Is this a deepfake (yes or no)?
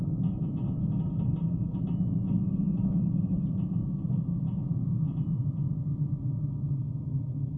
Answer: no